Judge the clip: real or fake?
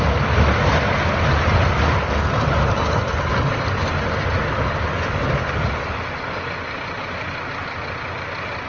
real